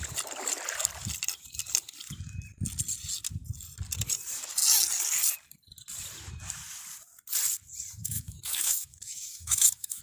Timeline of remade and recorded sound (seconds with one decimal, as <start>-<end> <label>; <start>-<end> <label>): 0.0-8.0 recorded; 8.0-10.0 remade